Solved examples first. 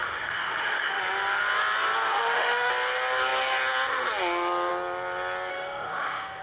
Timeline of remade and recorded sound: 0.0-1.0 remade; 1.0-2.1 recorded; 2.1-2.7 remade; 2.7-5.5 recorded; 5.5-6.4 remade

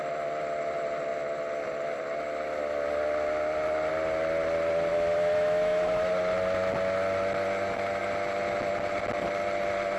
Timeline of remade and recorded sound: 0.0-4.9 recorded; 4.9-6.1 remade; 6.1-10.0 recorded